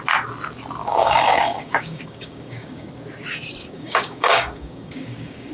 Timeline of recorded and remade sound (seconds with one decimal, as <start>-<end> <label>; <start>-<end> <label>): 0.0-0.8 recorded; 0.8-2.9 remade; 2.9-3.6 recorded; 3.6-5.5 remade